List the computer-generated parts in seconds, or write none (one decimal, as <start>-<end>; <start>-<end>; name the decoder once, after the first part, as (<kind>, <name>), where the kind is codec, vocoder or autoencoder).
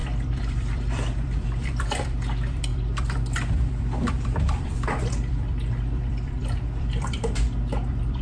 0.0-8.2 (vocoder, BigVGAN v2)